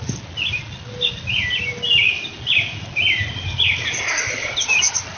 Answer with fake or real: real